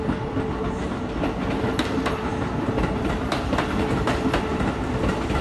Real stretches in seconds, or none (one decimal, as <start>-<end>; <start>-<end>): 0.0-2.3; 3.1-5.4